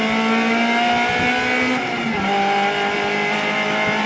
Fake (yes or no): no